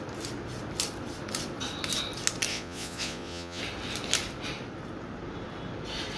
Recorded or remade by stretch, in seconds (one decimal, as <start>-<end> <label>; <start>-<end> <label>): 0.0-2.5 recorded; 2.5-3.6 remade; 3.6-6.2 recorded